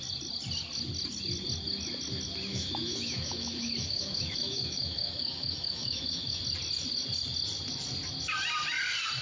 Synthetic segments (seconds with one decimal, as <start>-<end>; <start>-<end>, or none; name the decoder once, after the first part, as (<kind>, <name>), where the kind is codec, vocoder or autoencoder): 2.5-6.4 (autoencoder, DAC-VAE)